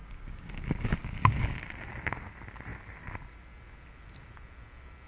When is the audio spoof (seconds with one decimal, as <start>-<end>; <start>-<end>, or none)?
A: 0.0-1.6